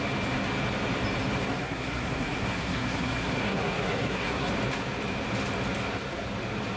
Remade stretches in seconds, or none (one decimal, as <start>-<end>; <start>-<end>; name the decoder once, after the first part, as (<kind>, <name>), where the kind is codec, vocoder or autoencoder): 1.6-4.5 (codec, SNAC)